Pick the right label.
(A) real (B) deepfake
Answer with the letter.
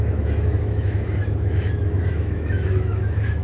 B